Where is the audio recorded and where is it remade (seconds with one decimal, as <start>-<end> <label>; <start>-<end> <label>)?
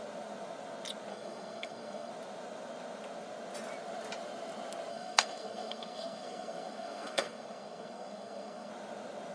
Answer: 0.0-1.1 recorded; 1.1-2.1 remade; 2.1-4.9 recorded; 4.9-8.7 remade; 8.7-9.3 recorded